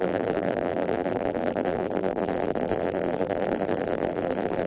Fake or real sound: fake